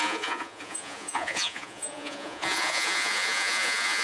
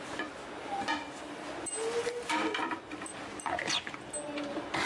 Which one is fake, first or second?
first